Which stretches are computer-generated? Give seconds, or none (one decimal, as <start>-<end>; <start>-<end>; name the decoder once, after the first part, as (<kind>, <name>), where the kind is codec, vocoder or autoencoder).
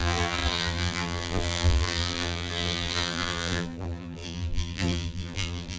0.0-5.8 (vocoder, BigVGAN v2)